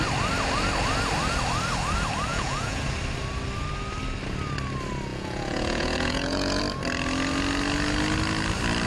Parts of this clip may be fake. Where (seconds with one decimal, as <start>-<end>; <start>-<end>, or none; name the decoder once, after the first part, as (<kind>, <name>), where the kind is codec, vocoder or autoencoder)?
2.3-2.8 (vocoder, Vocos); 5.1-6.6